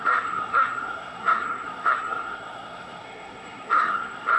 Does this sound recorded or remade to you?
remade